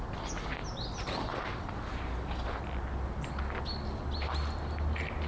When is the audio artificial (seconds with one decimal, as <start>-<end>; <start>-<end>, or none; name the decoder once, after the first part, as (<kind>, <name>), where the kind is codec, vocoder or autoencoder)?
none